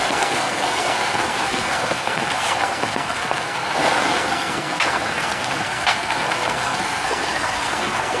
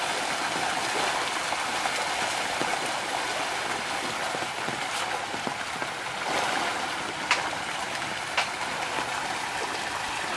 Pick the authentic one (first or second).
second